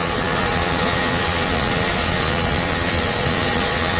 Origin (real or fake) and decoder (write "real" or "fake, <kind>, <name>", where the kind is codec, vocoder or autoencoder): fake, vocoder, Vocos